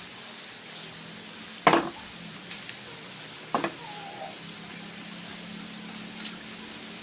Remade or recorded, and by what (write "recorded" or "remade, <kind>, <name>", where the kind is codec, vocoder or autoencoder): recorded